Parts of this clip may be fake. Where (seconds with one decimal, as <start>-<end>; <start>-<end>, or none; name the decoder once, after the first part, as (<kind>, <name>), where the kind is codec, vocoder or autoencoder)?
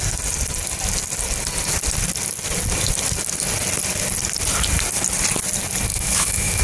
5.9-6.6 (autoencoder, DAC-VAE)